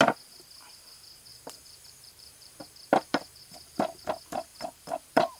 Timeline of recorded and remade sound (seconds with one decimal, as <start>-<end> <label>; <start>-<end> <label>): 0.0-1.3 recorded; 1.3-3.4 remade; 3.4-4.5 recorded; 4.5-5.4 remade

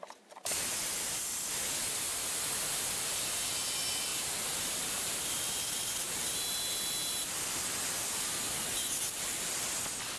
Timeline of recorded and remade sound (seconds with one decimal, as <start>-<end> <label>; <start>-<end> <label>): 0.0-4.1 recorded; 4.1-5.5 remade; 5.5-10.2 recorded

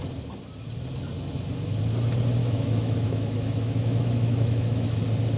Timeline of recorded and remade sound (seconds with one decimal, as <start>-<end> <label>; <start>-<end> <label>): 0.0-2.4 recorded; 2.4-5.0 remade; 5.0-5.4 recorded

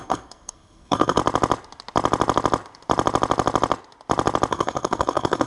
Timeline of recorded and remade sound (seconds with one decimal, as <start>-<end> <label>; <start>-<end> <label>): 0.0-1.2 remade; 1.2-4.5 recorded; 4.5-5.5 remade

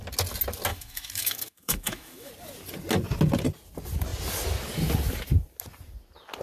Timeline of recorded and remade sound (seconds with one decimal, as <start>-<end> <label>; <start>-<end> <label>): 0.0-0.7 recorded; 0.7-2.3 remade; 2.3-6.4 recorded

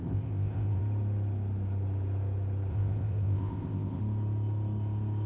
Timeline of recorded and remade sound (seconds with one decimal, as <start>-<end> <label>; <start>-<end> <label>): 0.0-0.8 remade; 0.8-2.7 recorded; 2.7-4.0 remade; 4.0-5.3 recorded

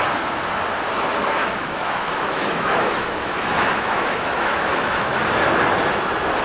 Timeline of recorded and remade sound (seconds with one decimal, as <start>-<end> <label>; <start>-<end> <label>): 0.0-1.4 recorded; 1.4-5.2 remade; 5.2-6.4 recorded